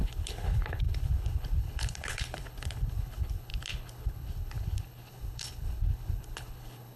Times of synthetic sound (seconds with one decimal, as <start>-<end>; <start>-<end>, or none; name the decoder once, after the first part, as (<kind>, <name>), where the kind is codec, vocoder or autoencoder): 0.0-7.0 (codec, HILCodec)